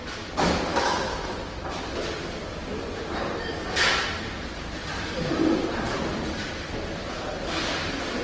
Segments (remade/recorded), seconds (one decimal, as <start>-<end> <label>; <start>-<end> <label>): 0.0-0.7 recorded; 0.7-1.8 remade; 1.8-8.2 recorded